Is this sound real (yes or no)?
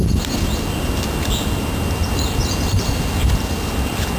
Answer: yes